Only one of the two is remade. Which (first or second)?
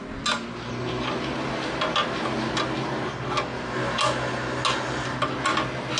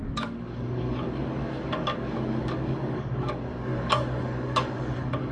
second